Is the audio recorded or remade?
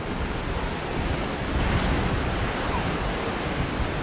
recorded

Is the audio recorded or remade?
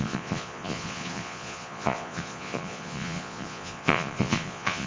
remade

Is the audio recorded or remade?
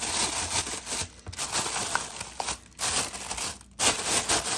recorded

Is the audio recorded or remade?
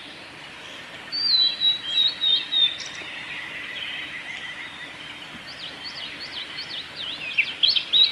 recorded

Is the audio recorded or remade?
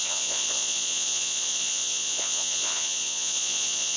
remade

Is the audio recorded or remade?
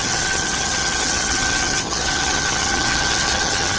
remade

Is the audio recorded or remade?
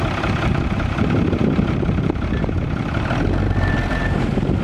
recorded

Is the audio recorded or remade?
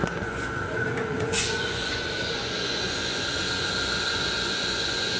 remade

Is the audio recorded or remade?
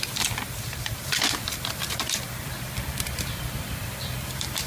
remade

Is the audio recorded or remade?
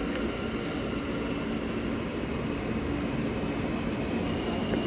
recorded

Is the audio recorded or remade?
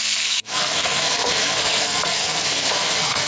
remade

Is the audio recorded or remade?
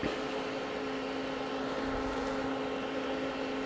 recorded